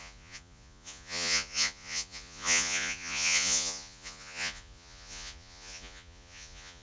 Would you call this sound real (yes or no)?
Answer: no